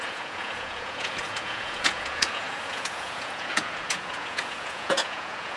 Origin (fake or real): fake